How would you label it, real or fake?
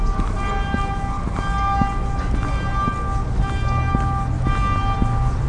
real